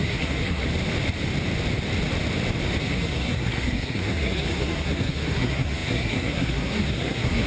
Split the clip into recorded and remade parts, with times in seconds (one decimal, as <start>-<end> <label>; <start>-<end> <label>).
0.0-0.7 remade; 0.7-2.8 recorded; 2.8-7.5 remade